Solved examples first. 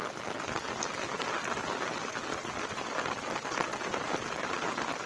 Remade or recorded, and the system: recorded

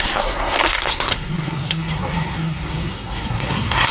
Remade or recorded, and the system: remade, codec, SNAC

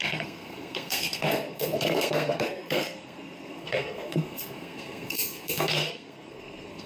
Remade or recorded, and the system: remade, codec, SNAC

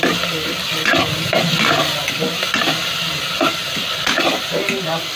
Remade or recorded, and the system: recorded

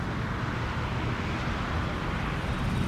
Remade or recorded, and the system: recorded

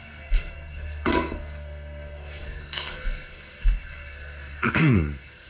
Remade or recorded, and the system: remade, codec, SNAC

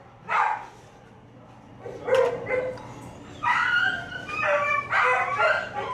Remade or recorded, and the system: recorded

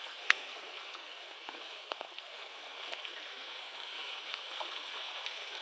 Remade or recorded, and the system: remade, codec, SNAC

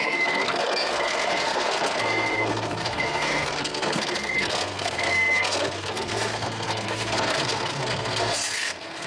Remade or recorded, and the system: remade, codec, SNAC